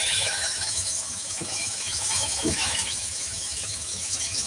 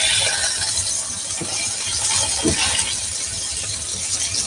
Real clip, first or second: second